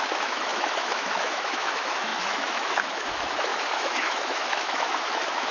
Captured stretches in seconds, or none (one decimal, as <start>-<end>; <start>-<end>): none